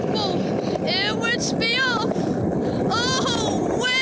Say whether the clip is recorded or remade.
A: recorded